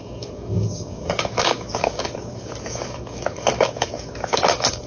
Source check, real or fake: fake